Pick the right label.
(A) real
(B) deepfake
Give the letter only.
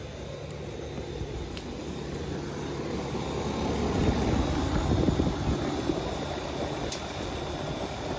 A